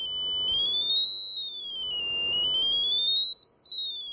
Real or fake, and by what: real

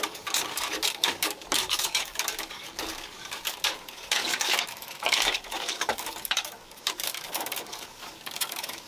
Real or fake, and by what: fake, codec, DAC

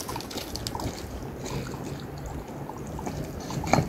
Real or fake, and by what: real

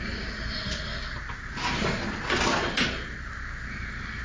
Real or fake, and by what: real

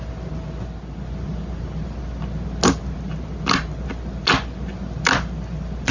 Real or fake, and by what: real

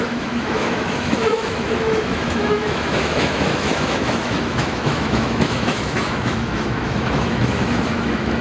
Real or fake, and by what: fake, autoencoder, DAC-VAE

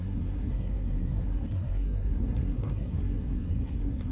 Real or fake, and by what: fake, codec, SNAC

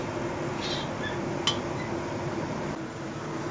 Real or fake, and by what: real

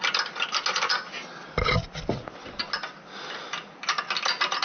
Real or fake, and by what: real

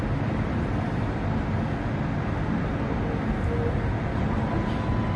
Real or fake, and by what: real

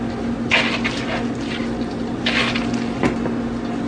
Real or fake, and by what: real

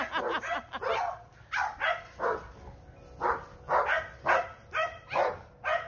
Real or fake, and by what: real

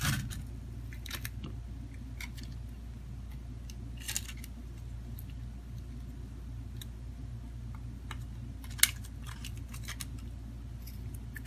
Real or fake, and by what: real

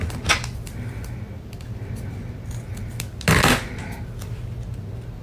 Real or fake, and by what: real